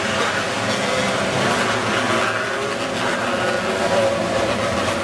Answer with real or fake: real